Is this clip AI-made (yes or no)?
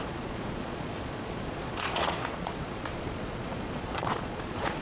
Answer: yes